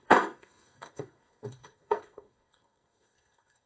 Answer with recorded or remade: remade